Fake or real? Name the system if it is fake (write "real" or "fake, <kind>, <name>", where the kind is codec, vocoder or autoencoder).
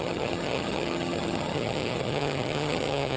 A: fake, vocoder, HiFi-GAN